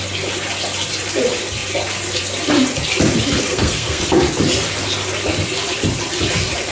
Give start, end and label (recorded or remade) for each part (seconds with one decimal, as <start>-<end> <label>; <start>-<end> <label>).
0.0-3.5 recorded; 3.5-4.0 remade; 4.0-6.7 recorded